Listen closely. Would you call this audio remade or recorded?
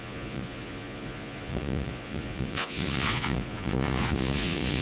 remade